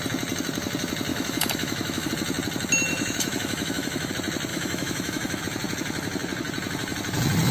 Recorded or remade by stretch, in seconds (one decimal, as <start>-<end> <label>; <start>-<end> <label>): 0.0-1.1 recorded; 1.1-2.1 remade; 2.1-2.9 recorded; 2.9-4.1 remade; 4.1-4.5 recorded; 4.5-5.4 remade; 5.4-7.5 recorded